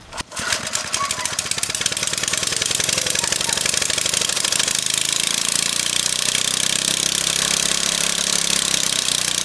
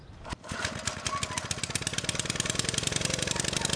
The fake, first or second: first